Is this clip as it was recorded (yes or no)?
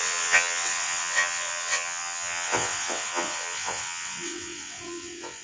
no